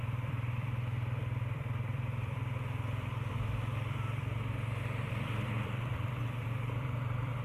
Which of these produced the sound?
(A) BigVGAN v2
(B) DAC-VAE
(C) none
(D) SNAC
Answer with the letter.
A